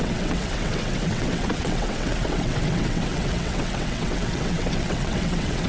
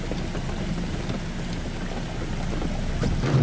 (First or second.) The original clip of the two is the second